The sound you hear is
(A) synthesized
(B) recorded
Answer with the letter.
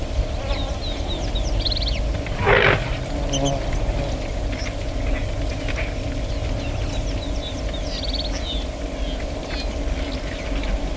B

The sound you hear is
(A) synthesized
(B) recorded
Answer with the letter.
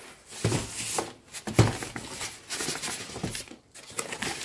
B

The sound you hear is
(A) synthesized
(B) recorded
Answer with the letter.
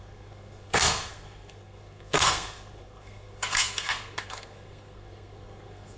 A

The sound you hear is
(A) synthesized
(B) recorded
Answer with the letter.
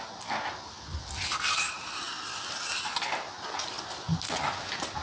B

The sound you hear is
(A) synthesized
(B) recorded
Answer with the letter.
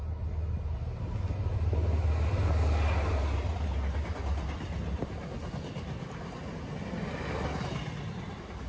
B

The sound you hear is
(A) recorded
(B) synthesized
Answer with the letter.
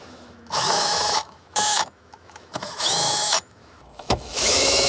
B